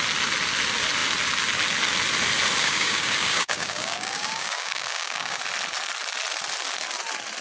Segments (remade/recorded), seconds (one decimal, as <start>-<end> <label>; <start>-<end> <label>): 0.0-2.6 recorded; 2.6-5.4 remade; 5.4-7.4 recorded